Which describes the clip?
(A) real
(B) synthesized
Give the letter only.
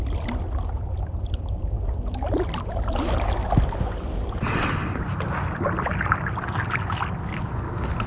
A